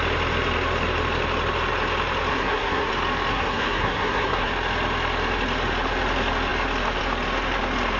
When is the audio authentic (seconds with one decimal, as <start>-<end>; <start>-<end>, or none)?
0.0-2.3; 2.9-3.3; 4.5-8.0